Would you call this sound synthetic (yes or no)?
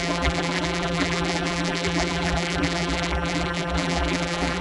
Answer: yes